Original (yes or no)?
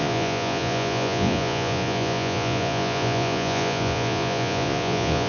no